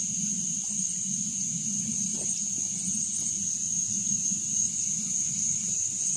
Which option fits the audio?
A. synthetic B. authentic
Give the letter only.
B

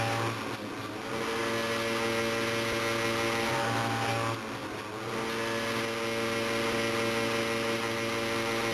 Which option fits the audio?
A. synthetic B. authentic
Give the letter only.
B